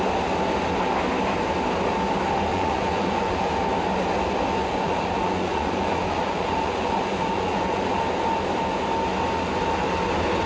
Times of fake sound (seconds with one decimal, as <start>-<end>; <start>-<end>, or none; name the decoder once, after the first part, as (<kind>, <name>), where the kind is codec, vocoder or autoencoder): 2.5-3.5 (vocoder, Vocos); 4.6-8.0